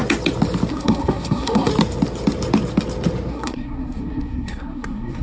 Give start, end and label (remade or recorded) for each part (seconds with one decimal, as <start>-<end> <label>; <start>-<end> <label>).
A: 0.0-0.7 recorded; 0.7-1.7 remade; 1.7-3.3 recorded; 3.3-5.2 remade